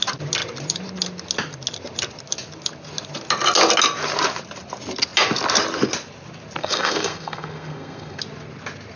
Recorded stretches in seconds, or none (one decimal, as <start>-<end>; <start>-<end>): 0.0-6.6; 8.2-9.0